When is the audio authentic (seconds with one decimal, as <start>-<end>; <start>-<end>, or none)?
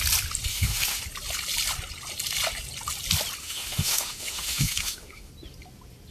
0.0-0.5; 1.0-3.4; 5.3-6.1